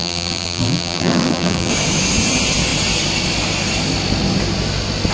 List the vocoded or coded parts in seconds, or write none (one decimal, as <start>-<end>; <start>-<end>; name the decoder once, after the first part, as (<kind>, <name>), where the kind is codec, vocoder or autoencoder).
0.0-1.7 (vocoder, BigVGAN v2)